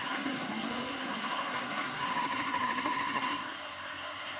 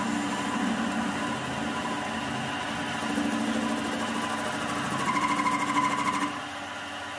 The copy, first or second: first